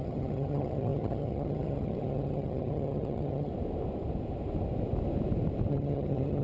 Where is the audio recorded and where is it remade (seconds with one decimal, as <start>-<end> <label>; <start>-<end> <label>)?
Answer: 0.0-3.5 remade; 3.5-5.7 recorded; 5.7-6.4 remade